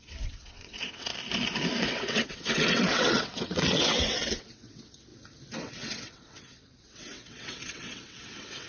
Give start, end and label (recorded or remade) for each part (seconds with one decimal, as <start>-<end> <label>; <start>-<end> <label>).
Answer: 0.0-1.1 remade; 1.1-1.8 recorded; 1.8-5.1 remade; 5.1-5.6 recorded; 5.6-8.7 remade